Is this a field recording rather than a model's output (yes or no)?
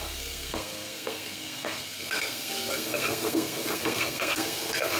no